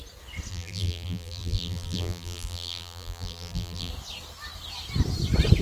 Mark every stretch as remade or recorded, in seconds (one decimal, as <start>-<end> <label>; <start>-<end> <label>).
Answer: 0.0-0.5 recorded; 0.5-3.9 remade; 3.9-5.6 recorded